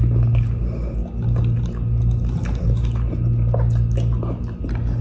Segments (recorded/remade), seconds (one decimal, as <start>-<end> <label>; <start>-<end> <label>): 0.0-5.0 recorded